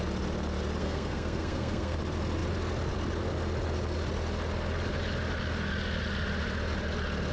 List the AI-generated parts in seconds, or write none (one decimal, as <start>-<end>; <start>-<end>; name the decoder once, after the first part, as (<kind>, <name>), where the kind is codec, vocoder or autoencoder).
0.8-2.0 (codec, SNAC)